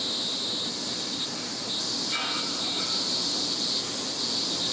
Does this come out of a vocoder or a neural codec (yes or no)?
no